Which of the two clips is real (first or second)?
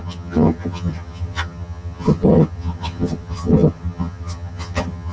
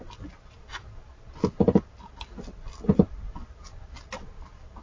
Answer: second